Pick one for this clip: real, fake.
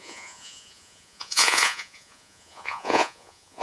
fake